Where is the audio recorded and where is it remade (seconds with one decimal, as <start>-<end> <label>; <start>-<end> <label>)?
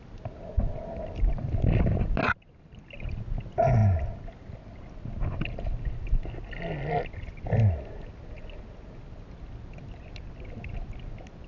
0.0-11.5 recorded